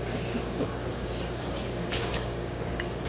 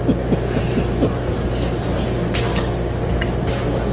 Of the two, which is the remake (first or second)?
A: first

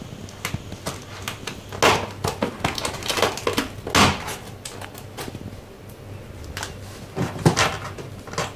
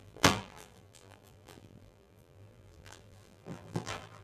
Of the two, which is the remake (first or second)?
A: second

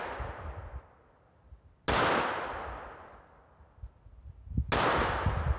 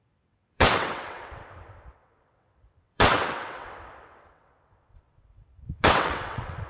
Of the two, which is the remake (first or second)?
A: second